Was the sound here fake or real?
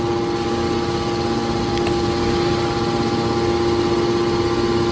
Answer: real